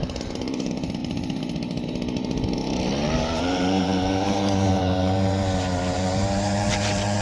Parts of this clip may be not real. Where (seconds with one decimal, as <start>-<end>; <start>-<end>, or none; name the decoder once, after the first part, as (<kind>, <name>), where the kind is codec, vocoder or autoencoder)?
0.0-7.2 (vocoder, BigVGAN v2)